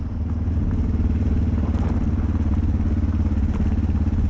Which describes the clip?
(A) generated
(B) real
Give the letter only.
B